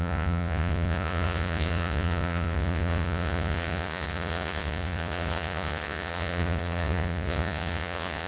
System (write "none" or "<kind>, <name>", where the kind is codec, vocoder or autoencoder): vocoder, Vocos